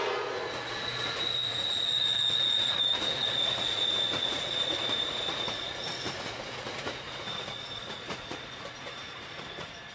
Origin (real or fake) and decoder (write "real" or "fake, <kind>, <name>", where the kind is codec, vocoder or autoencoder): fake, vocoder, Vocos